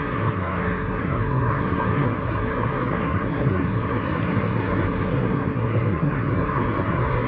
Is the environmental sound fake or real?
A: fake